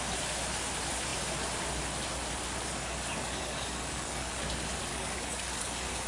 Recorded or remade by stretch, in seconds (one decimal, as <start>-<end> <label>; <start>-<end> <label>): 0.0-2.8 recorded; 2.8-4.4 remade; 4.4-4.9 recorded; 4.9-6.1 remade